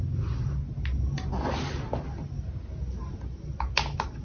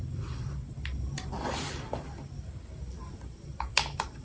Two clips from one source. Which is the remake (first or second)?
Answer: second